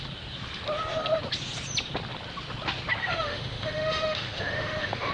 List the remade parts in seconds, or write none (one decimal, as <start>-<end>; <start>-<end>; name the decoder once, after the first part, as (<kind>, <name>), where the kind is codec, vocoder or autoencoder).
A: 3.0-5.1 (autoencoder, DAC-VAE)